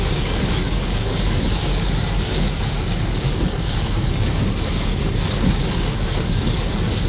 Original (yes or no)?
no